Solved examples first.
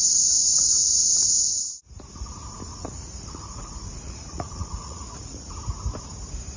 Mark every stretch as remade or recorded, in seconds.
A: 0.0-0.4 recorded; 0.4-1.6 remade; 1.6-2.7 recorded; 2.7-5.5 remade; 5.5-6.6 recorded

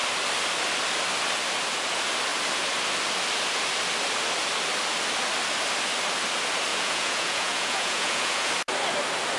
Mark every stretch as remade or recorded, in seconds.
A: 0.0-6.7 recorded; 6.7-8.5 remade; 8.5-9.4 recorded

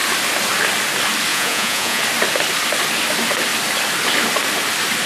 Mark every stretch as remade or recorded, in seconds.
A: 0.0-1.3 recorded; 1.3-2.0 remade; 2.0-5.1 recorded

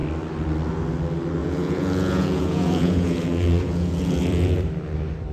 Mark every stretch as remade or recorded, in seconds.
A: 0.0-1.4 recorded; 1.4-4.6 remade; 4.6-5.3 recorded

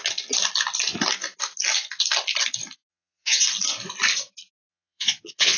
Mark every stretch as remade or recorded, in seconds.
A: 0.0-2.9 recorded; 2.9-3.4 remade; 3.4-4.7 recorded; 4.7-5.6 remade